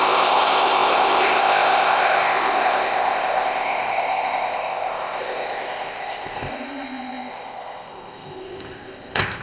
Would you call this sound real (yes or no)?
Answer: no